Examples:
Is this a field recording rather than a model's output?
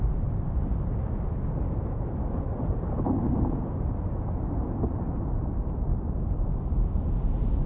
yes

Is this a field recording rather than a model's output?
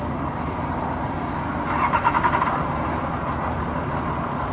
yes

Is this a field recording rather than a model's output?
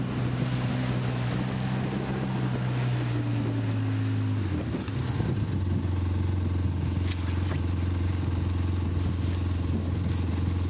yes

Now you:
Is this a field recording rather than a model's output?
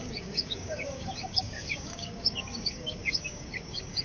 no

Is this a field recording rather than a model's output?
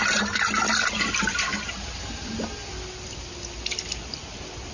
yes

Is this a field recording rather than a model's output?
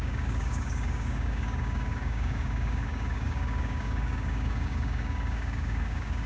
no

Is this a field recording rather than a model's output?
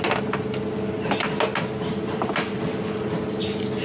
yes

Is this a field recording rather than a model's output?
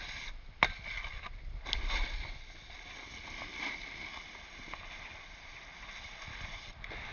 yes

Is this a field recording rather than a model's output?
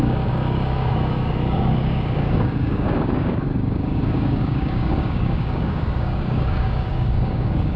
no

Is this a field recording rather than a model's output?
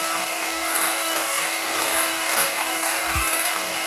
no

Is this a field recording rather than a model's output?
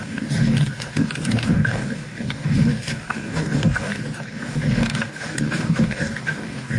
no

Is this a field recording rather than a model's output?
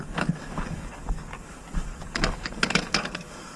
no